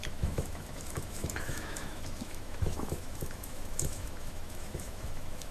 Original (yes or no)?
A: no